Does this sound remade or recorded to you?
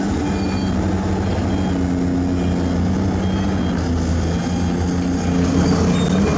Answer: recorded